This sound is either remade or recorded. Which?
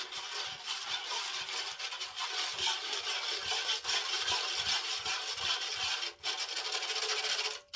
recorded